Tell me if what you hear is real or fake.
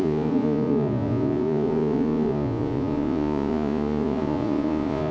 fake